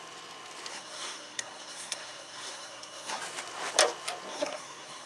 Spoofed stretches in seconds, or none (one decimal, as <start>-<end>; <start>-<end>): 0.7-3.2; 4.3-5.1